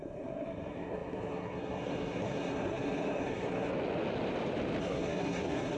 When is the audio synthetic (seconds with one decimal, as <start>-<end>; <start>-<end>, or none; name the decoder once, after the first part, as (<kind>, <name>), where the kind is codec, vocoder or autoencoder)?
0.0-3.7 (codec, SNAC); 4.8-5.8